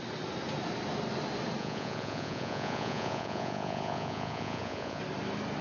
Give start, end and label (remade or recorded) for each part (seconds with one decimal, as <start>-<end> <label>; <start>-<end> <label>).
0.0-1.6 recorded; 1.6-5.0 remade; 5.0-5.6 recorded

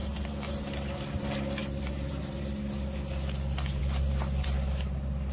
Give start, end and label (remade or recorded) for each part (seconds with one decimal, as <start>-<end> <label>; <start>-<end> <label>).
0.0-0.6 remade; 0.6-5.3 recorded